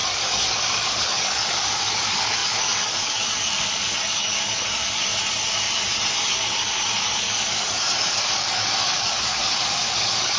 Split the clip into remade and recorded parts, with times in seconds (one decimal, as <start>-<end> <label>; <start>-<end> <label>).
0.0-5.1 remade; 5.1-6.1 recorded; 6.1-10.4 remade